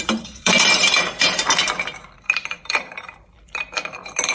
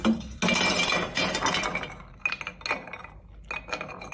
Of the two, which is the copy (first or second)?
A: first